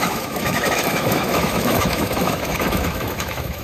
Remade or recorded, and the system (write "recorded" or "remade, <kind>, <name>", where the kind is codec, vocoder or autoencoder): remade, autoencoder, DAC-VAE